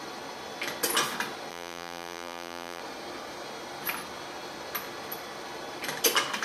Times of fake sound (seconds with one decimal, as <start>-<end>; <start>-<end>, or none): 1.5-2.8